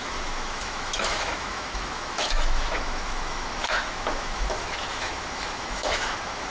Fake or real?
fake